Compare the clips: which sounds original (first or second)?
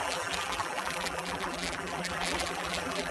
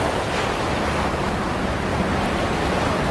second